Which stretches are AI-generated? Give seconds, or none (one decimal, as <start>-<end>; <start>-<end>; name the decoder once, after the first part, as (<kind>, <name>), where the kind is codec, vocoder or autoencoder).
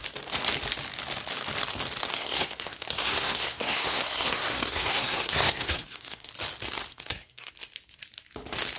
2.1-6.3 (codec, SNAC); 6.9-7.5